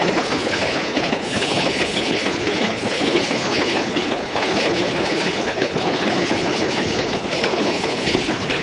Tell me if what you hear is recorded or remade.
remade